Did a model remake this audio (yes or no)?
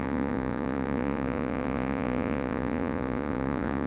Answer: yes